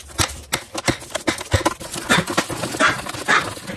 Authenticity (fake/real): real